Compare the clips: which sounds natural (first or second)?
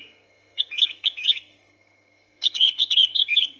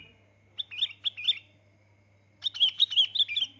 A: second